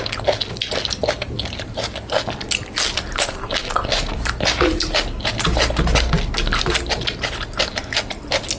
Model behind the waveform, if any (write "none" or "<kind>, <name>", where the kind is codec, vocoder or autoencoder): none